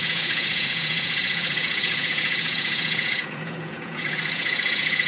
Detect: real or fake fake